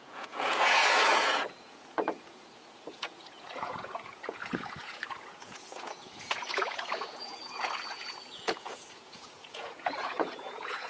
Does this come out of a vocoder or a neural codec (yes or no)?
yes